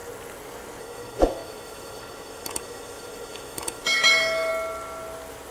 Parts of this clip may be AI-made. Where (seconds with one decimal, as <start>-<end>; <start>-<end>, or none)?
0.8-4.5